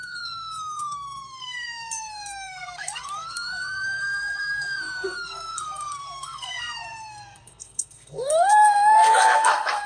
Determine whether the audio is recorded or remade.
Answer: remade